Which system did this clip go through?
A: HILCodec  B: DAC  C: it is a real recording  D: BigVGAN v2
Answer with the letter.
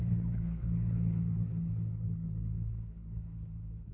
A